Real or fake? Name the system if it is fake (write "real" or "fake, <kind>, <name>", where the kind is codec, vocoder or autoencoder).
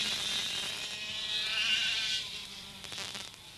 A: fake, vocoder, BigVGAN v2